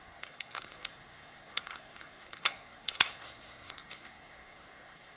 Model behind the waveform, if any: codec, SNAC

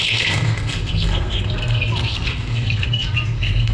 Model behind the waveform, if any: codec, SNAC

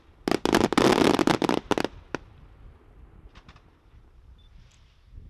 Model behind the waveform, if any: none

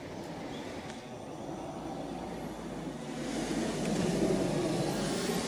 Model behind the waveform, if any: none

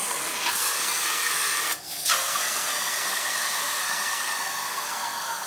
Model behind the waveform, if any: codec, SNAC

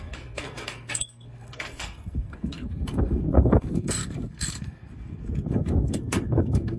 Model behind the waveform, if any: codec, SNAC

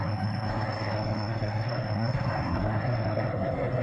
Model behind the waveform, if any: codec, SNAC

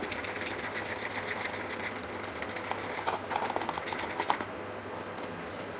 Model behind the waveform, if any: none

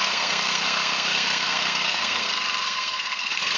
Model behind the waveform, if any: codec, SNAC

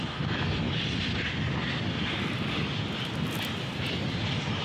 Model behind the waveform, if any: none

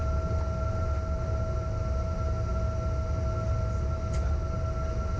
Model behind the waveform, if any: none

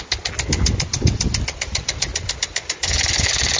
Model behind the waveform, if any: none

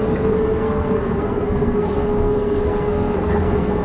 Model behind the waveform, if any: codec, SNAC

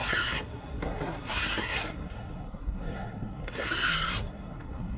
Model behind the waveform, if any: codec, SNAC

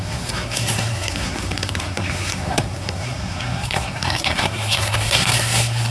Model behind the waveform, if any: codec, SNAC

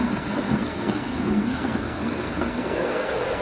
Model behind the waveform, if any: codec, SNAC